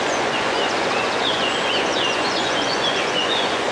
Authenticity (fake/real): fake